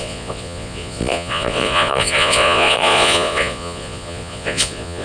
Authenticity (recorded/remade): remade